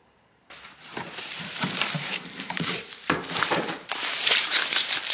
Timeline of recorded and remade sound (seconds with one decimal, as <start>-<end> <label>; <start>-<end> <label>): 0.0-5.1 remade